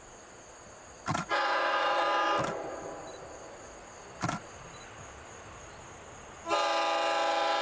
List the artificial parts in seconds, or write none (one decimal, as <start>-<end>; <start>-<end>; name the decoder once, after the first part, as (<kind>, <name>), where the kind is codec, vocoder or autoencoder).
1.1-2.0 (vocoder, Vocos)